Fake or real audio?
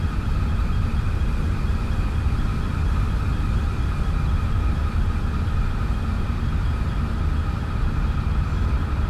real